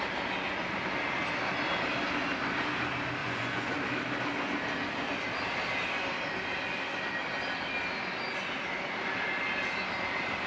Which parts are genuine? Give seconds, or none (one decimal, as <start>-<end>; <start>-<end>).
0.0-3.2; 3.8-10.5